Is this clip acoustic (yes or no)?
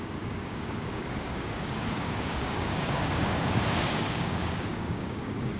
no